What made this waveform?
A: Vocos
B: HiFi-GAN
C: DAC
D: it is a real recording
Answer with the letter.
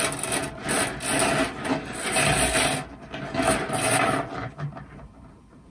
D